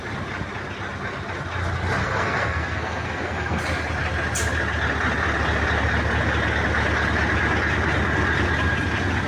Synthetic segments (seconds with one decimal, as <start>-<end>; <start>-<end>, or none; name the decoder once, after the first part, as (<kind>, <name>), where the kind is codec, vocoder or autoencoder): 2.0-3.6 (codec, SNAC)